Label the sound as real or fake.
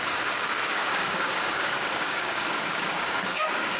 fake